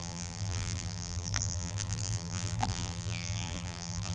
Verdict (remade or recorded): remade